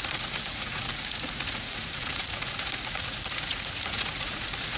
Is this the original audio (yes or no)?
no